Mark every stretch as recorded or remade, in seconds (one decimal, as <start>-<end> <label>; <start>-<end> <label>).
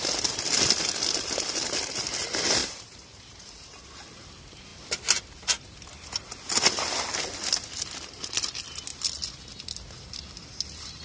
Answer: 0.0-2.6 recorded; 2.6-3.9 remade; 3.9-11.0 recorded